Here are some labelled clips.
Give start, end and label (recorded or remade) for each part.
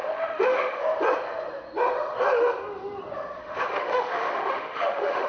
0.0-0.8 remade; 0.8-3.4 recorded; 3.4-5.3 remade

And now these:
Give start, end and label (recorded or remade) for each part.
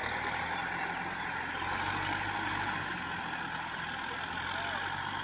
0.0-5.2 recorded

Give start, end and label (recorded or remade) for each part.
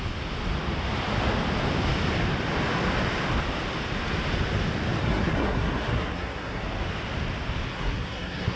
0.0-5.0 recorded; 5.0-6.6 remade; 6.6-7.7 recorded; 7.7-8.6 remade